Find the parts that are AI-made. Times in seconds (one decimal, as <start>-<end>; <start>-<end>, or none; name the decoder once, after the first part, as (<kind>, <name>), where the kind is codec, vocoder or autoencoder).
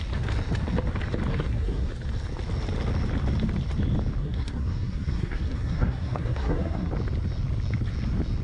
1.3-1.9 (codec, SNAC); 4.2-6.9